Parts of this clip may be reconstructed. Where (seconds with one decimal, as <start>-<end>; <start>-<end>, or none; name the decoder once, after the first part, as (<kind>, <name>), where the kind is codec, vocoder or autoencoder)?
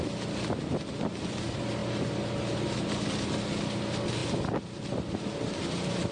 none